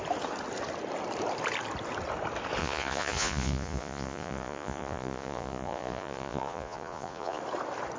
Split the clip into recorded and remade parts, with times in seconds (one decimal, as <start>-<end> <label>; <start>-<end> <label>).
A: 0.0-2.6 recorded; 2.6-7.4 remade; 7.4-8.0 recorded